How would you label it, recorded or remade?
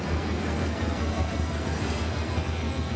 remade